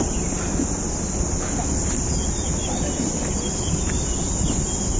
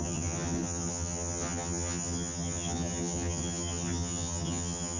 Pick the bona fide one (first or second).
first